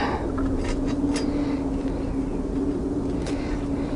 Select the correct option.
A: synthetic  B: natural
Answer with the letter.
B